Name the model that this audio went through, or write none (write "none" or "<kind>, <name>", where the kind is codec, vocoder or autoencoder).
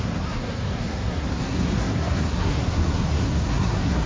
codec, SNAC